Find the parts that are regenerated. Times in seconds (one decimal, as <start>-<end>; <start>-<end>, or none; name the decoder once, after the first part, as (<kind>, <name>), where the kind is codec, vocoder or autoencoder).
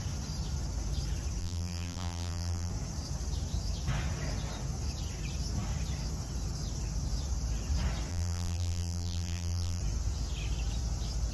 1.4-2.7 (vocoder, BigVGAN v2); 8.1-9.8